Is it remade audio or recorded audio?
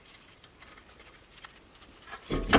recorded